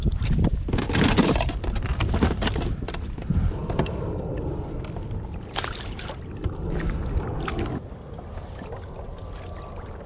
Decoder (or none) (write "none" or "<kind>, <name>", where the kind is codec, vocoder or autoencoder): none